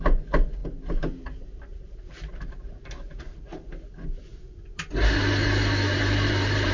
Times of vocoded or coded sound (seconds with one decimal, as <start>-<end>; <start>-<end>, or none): 0.6-2.9; 5.4-6.7